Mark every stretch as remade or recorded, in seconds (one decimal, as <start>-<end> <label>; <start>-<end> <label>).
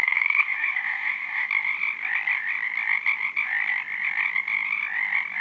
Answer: 0.0-1.5 remade; 1.5-5.4 recorded